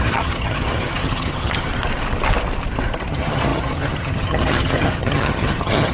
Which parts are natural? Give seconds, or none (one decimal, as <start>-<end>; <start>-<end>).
1.7-3.1